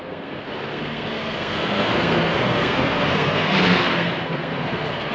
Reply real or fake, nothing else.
fake